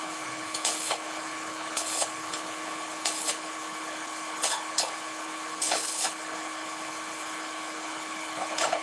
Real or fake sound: fake